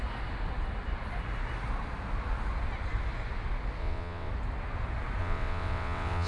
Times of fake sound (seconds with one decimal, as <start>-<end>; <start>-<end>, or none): 3.8-4.3; 5.2-6.3